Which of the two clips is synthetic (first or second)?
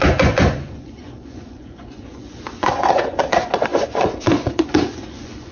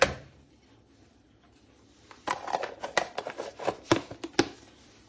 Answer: first